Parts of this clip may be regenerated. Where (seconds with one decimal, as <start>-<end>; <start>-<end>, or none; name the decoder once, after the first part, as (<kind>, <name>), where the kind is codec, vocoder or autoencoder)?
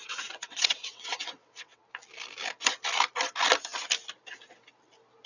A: 0.0-1.9 (vocoder, WaveNeXt)